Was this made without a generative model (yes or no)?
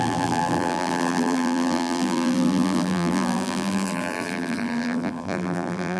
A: no